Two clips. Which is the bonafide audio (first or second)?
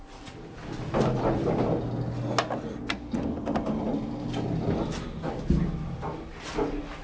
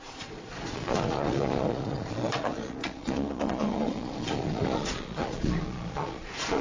first